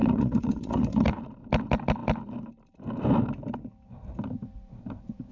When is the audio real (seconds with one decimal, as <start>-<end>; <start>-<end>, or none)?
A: 1.2-5.3